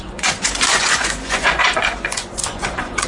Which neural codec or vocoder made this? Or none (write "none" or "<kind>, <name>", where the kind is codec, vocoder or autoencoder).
vocoder, Vocos